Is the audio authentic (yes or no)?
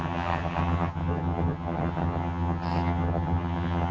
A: no